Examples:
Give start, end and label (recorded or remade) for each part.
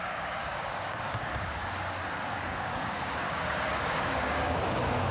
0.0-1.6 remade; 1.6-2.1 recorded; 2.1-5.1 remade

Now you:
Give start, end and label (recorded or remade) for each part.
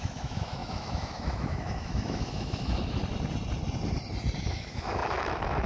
0.0-3.0 remade; 3.0-4.4 recorded; 4.4-5.7 remade